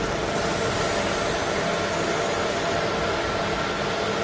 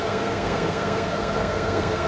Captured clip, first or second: first